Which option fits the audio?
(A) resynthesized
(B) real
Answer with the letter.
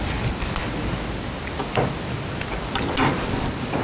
B